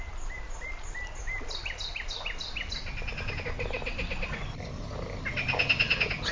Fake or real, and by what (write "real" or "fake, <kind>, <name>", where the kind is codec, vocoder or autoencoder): real